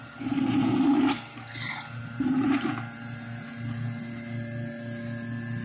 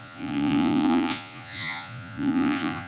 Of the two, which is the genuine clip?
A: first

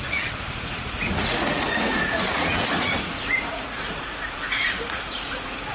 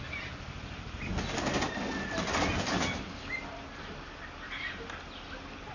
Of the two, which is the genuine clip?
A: second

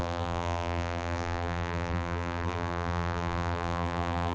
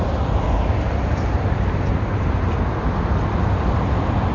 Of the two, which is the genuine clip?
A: second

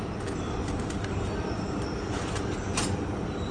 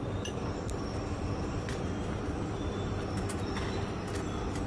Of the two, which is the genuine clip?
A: second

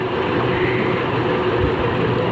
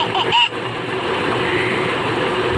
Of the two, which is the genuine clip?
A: first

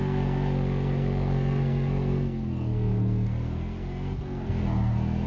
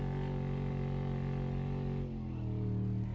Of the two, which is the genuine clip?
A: second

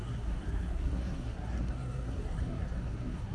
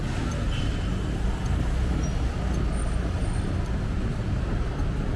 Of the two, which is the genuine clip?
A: second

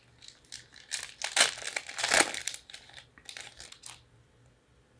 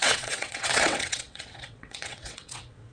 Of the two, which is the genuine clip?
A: first